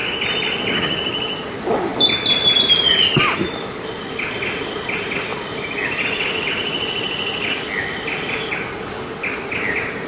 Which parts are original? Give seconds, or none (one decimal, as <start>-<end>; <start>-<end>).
0.0-10.1

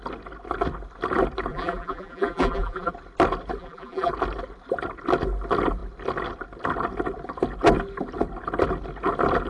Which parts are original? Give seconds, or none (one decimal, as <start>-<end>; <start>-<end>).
0.0-1.5; 2.9-3.6; 4.1-9.5

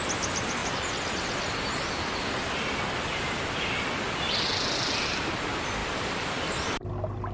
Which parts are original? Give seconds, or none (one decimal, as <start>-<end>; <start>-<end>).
0.0-5.8; 6.5-7.3

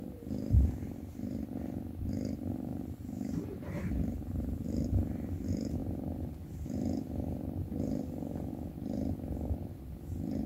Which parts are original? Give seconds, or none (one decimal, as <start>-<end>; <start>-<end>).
0.0-2.7; 3.9-10.5